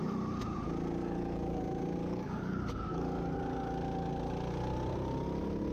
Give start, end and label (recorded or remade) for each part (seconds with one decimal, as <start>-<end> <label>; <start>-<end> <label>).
0.0-1.0 recorded; 1.0-1.6 remade; 1.6-2.0 recorded; 2.0-3.4 remade; 3.4-5.7 recorded